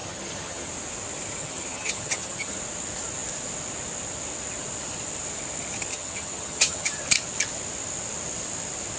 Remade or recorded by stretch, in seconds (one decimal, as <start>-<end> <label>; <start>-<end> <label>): 0.0-0.7 remade; 0.7-1.4 recorded; 1.4-2.6 remade; 2.6-5.9 recorded; 5.9-7.0 remade; 7.0-9.0 recorded